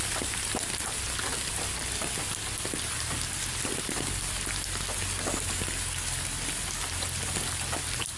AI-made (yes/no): no